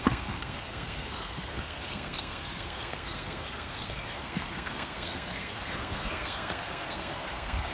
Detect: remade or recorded remade